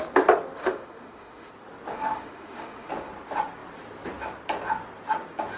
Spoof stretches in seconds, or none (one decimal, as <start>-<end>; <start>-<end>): 0.6-1.5; 1.9-2.9